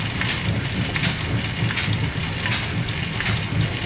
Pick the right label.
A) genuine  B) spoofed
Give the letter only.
A